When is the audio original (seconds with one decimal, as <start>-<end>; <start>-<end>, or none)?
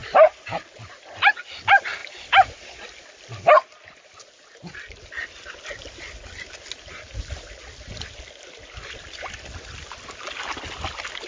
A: 0.0-11.3